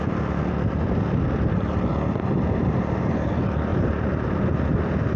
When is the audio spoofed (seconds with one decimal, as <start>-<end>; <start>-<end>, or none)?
3.7-4.3